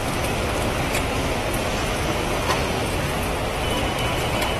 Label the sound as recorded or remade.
recorded